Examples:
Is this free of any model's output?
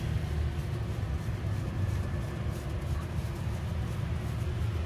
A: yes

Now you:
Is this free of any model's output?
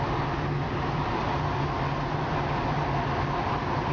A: yes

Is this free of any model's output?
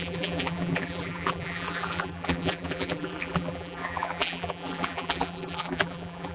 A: no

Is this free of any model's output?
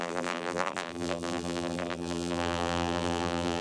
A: no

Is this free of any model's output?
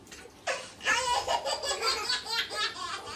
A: yes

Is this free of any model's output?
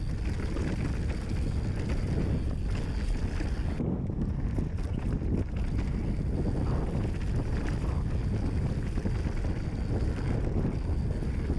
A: yes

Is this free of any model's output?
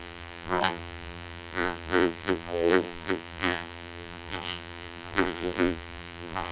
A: no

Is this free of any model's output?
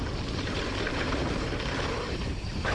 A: no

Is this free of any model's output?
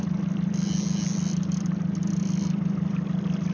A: yes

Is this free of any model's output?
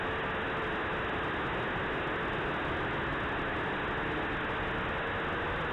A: yes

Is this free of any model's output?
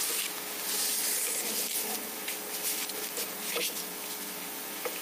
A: yes